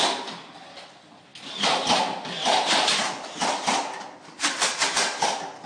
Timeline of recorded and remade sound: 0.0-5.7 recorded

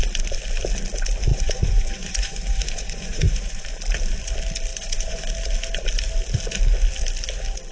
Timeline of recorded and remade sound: 0.0-1.3 recorded; 1.3-3.7 remade; 3.7-4.7 recorded; 4.7-5.3 remade; 5.3-7.7 recorded

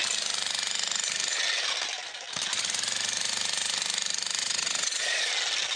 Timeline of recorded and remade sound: 0.0-4.4 recorded; 4.4-5.3 remade; 5.3-5.8 recorded

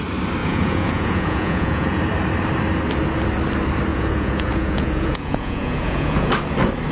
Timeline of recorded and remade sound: 0.0-0.4 recorded; 0.4-2.0 remade; 2.0-3.9 recorded; 3.9-6.3 remade; 6.3-6.9 recorded

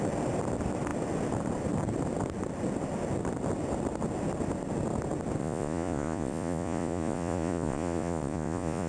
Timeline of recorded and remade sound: 0.0-5.4 recorded; 5.4-8.9 remade

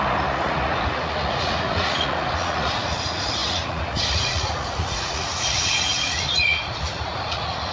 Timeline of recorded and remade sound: 0.0-7.7 remade

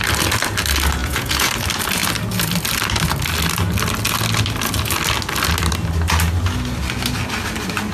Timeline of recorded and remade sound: 0.0-1.0 recorded; 1.0-1.5 remade; 1.5-7.9 recorded

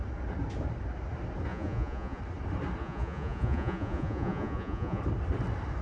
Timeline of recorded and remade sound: 0.0-1.5 recorded; 1.5-2.2 remade; 2.2-2.8 recorded; 2.8-5.0 remade; 5.0-5.8 recorded